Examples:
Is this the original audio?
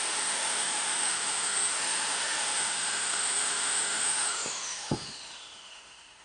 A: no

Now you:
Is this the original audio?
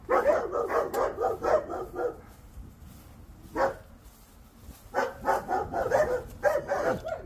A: yes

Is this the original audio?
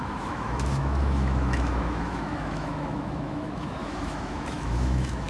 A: no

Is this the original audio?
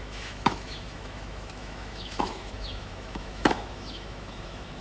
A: no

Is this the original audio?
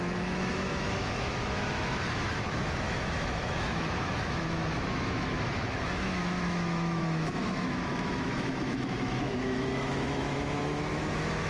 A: no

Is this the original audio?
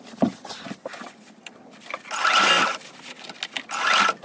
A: yes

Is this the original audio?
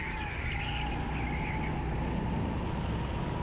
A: yes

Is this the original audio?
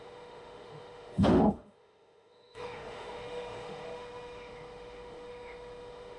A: no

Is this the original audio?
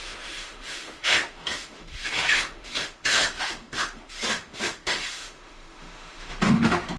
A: no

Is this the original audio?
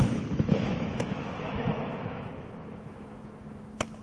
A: no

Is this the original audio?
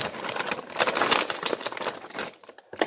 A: yes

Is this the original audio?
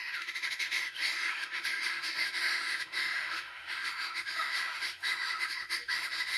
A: no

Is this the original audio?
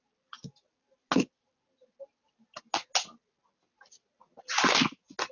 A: yes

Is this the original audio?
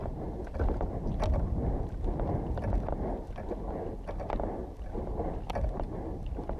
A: yes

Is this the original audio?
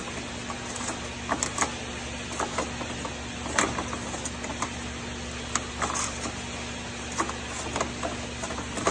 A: yes